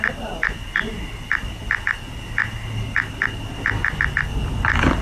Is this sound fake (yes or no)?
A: no